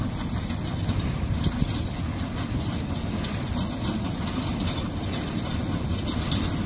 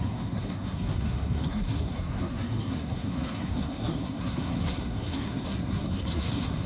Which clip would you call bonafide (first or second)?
first